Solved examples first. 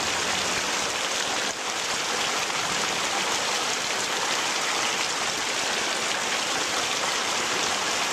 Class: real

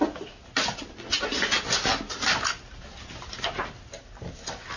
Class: real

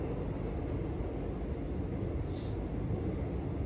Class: real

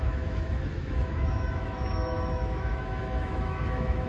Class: fake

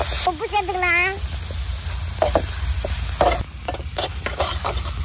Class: real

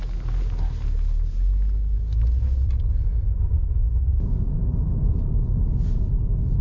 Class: real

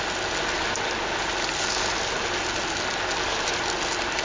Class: real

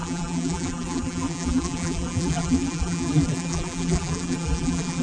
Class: fake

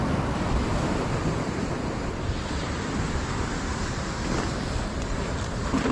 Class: real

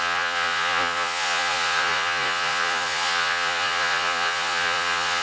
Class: fake